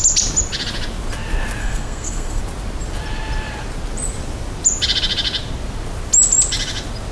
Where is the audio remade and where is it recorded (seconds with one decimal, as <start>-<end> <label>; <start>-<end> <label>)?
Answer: 0.0-1.6 recorded; 1.6-2.4 remade; 2.4-7.1 recorded